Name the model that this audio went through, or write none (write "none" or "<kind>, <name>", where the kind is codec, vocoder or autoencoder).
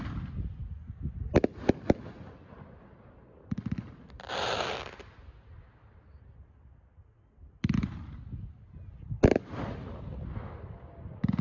none